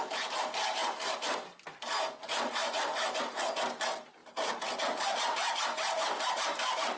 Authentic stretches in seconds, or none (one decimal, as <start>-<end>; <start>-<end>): 0.0-7.0